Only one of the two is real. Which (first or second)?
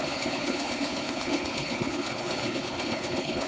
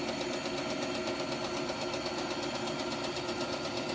second